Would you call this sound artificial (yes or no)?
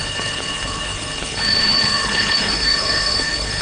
yes